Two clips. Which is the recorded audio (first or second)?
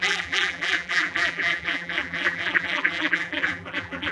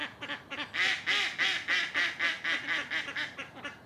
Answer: second